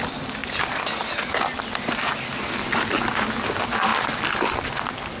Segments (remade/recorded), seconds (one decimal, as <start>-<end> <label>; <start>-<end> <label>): 0.0-5.2 recorded